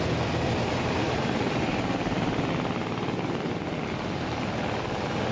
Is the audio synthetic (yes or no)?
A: yes